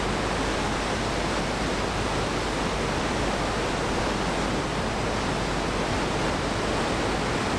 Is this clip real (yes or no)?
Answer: yes